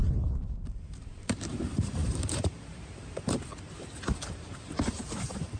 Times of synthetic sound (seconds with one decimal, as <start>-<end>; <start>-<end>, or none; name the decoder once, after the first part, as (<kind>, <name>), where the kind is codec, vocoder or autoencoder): 0.0-5.6 (vocoder, BigVGAN v2)